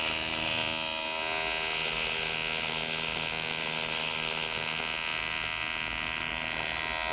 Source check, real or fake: real